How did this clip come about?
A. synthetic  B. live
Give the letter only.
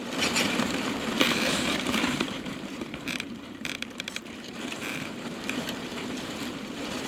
A